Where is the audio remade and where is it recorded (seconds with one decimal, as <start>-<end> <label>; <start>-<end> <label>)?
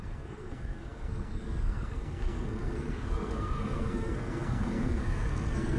0.0-5.8 remade